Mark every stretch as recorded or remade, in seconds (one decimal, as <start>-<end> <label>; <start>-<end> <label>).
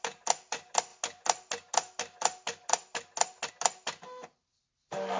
0.0-5.2 recorded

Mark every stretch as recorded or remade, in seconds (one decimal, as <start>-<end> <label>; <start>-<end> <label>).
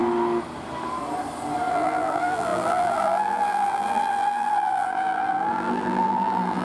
0.0-1.7 recorded; 1.7-6.6 remade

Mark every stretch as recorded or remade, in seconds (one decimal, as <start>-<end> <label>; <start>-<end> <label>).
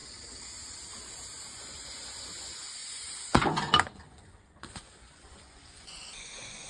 0.0-1.1 recorded; 1.1-6.7 remade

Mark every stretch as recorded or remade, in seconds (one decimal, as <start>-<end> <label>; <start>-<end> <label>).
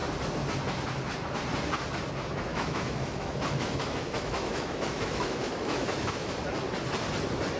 0.0-2.5 recorded; 2.5-6.3 remade; 6.3-7.6 recorded